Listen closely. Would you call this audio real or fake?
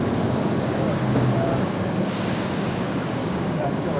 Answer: fake